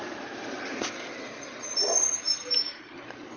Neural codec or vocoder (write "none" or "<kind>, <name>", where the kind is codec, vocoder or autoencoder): vocoder, BigVGAN v2